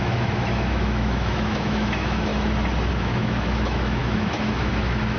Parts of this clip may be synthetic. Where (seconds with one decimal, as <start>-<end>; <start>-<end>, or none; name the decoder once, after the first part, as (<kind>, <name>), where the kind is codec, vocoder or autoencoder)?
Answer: 0.0-2.3 (autoencoder, DAC-VAE); 2.9-5.2